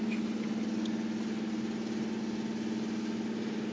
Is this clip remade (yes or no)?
no